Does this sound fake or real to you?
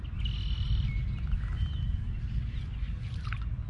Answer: real